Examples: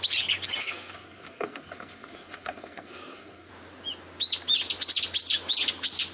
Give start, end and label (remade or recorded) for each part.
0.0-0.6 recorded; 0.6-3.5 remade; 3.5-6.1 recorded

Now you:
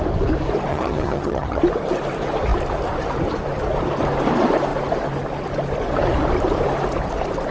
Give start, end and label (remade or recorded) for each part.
0.0-0.7 recorded; 0.7-1.6 remade; 1.6-7.5 recorded